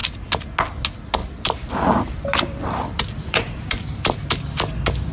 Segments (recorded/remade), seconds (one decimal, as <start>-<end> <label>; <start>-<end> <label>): 0.0-1.2 recorded; 1.2-4.3 remade; 4.3-5.1 recorded